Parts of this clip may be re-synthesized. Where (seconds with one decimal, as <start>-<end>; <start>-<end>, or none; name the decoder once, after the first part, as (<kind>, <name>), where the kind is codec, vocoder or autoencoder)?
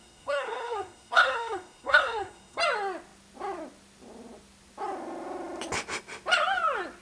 0.0-2.6 (codec, SNAC)